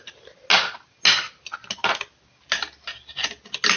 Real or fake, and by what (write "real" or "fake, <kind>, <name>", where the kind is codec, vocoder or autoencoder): real